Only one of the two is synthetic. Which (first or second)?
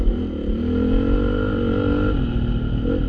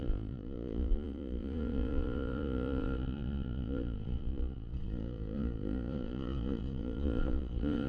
second